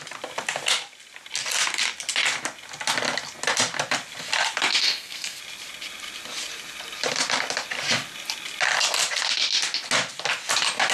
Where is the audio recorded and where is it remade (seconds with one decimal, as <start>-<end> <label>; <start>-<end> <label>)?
0.0-4.8 recorded; 4.8-5.4 remade; 5.4-10.9 recorded

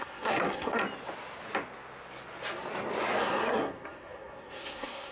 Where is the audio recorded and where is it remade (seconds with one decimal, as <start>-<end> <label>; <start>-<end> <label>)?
0.0-0.8 remade; 0.8-3.2 recorded; 3.2-5.1 remade

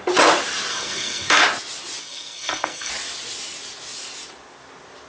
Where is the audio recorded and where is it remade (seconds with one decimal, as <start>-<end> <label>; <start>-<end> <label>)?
0.0-0.7 recorded; 0.7-1.4 remade; 1.4-2.0 recorded; 2.0-2.9 remade; 2.9-5.1 recorded

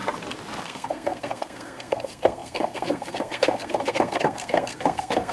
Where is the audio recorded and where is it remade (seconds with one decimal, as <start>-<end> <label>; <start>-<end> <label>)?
0.0-0.6 recorded; 0.6-5.3 remade

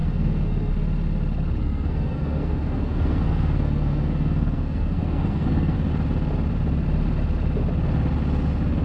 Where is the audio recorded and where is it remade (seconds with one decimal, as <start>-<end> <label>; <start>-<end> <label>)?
0.0-0.7 remade; 0.7-1.6 recorded; 1.6-5.9 remade; 5.9-8.8 recorded